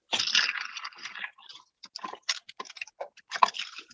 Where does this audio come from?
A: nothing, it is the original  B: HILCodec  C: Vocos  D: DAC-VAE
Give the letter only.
A